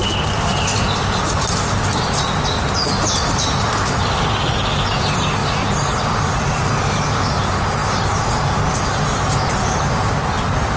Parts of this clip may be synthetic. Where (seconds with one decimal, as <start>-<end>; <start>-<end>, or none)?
none